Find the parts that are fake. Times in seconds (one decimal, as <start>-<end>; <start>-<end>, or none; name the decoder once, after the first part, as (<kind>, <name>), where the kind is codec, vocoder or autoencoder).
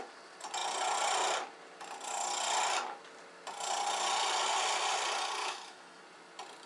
5.4-6.0 (autoencoder, DAC-VAE)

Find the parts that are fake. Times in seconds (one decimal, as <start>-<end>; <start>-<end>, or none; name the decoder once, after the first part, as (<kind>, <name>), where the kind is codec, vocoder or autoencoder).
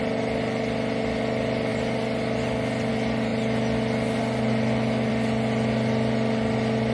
none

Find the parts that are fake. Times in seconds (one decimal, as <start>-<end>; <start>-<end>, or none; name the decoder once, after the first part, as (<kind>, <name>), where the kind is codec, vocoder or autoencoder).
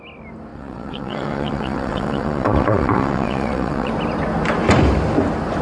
0.5-3.9 (vocoder, WaveNeXt)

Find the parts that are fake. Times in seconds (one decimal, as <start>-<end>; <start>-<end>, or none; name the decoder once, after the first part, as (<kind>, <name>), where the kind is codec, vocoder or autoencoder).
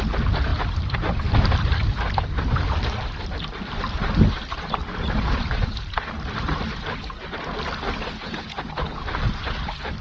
8.2-9.0 (vocoder, Vocos)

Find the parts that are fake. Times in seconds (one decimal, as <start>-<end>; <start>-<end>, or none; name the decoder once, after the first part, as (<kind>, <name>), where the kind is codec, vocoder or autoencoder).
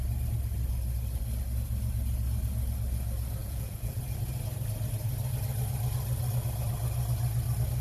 3.4-4.0 (vocoder, Vocos)